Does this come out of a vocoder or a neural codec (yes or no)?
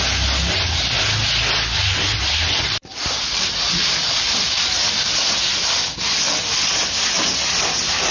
no